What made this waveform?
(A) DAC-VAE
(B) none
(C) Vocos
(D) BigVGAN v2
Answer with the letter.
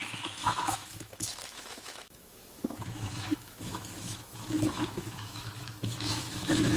A